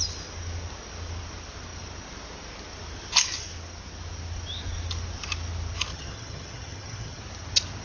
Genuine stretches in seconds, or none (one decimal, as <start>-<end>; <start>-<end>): 0.0-5.9; 7.2-7.8